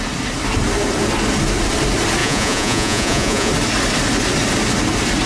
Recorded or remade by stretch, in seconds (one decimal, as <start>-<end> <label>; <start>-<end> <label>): 0.0-2.2 recorded; 2.2-3.5 remade; 3.5-5.3 recorded